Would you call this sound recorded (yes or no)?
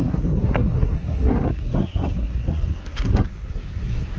no